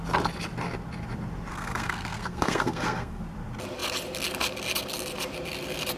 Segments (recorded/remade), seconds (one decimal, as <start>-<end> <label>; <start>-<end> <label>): 0.0-1.5 recorded; 1.5-3.2 remade; 3.2-6.0 recorded